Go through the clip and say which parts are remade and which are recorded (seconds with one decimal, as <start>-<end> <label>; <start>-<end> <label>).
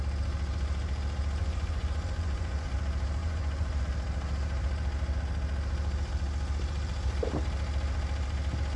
0.0-1.4 recorded; 1.4-2.7 remade; 2.7-3.2 recorded; 3.2-3.8 remade; 3.8-8.8 recorded